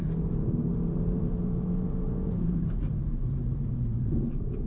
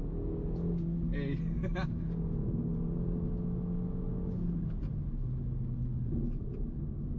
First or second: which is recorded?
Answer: second